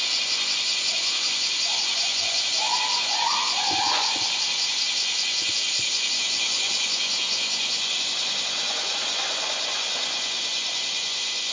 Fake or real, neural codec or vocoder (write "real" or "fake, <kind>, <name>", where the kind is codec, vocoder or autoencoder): fake, vocoder, Vocos